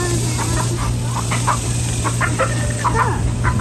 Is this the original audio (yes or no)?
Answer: yes